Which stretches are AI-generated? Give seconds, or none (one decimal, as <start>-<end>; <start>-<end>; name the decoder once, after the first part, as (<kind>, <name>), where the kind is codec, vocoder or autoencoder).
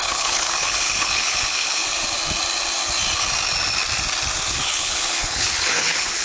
0.0-1.8 (codec, HILCodec); 4.5-6.2